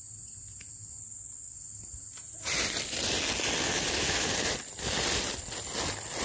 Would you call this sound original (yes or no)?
yes